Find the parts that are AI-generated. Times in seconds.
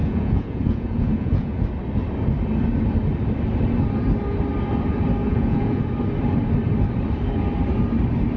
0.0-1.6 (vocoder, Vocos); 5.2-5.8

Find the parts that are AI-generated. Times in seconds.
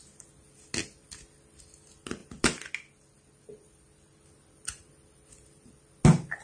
none